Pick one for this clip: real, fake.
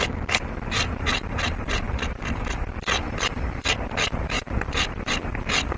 real